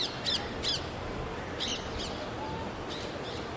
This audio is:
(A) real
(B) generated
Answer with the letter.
A